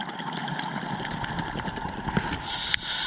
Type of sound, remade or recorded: recorded